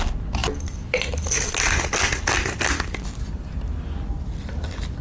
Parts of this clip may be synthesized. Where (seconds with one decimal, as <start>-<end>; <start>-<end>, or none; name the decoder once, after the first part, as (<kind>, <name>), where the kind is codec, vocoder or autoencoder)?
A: none